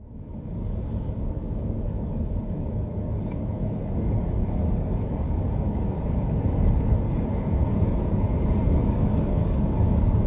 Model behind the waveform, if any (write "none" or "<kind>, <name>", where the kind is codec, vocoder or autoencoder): codec, DAC